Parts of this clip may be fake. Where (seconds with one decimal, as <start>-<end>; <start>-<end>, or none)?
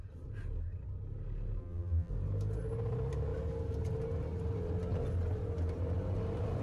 1.6-2.1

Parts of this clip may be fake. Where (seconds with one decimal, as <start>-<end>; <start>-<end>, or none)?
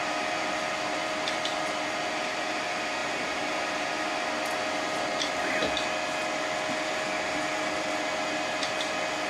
3.0-3.9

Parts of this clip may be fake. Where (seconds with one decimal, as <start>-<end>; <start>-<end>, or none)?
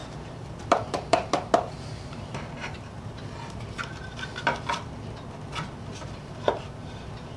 0.0-3.6; 5.9-7.0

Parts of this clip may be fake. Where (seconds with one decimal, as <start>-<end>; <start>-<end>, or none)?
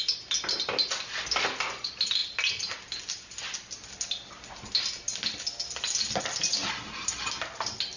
none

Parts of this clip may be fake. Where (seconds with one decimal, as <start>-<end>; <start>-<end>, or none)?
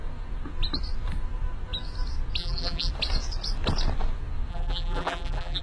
2.4-2.9; 4.5-5.6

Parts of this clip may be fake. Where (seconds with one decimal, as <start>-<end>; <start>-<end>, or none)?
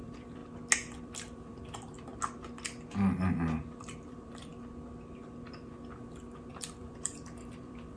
0.0-0.4; 1.0-2.1; 3.6-4.5; 6.5-8.0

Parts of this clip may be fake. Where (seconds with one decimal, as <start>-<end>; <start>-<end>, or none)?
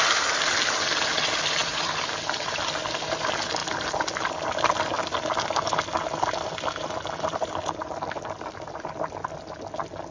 1.6-2.6; 3.6-4.4